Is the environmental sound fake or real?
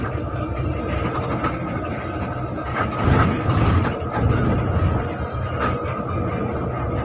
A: real